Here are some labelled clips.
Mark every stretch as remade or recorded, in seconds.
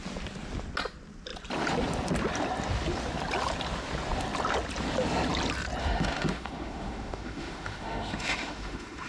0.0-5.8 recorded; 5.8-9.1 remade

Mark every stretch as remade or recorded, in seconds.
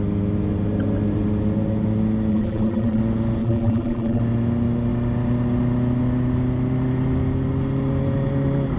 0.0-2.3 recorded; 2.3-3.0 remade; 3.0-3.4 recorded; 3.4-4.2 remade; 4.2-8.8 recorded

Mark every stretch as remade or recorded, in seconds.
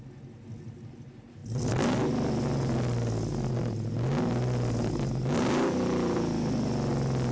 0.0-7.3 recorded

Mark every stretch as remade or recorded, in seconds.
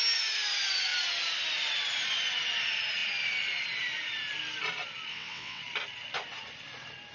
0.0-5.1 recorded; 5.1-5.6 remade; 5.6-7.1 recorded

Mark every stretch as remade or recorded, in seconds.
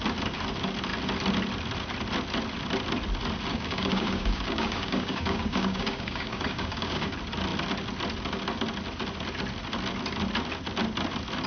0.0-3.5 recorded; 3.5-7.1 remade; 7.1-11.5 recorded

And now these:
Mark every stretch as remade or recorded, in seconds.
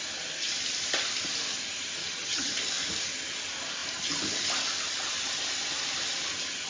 0.0-2.0 recorded; 2.0-2.5 remade; 2.5-6.7 recorded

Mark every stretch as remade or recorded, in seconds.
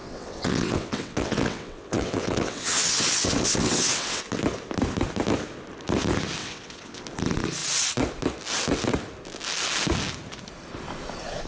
0.0-4.2 remade; 4.2-6.4 recorded; 6.4-7.0 remade; 7.0-11.5 recorded